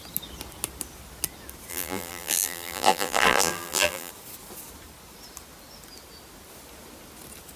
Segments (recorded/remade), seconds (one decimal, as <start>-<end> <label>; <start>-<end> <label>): 0.0-1.7 recorded; 1.7-4.1 remade; 4.1-7.6 recorded